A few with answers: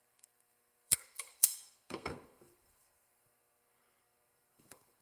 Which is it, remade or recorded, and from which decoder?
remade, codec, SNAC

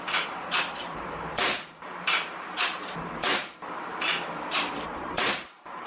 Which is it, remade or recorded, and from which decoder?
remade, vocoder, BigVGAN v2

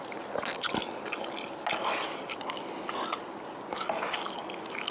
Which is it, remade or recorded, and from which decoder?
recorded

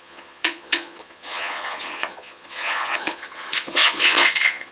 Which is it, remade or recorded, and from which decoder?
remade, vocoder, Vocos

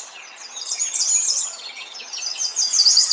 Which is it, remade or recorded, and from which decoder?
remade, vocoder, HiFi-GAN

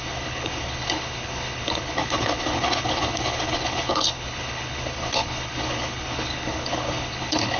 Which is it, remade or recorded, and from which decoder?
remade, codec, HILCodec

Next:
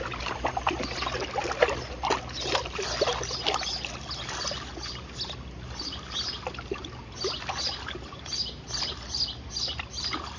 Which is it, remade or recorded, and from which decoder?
recorded